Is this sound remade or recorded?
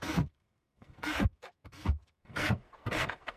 remade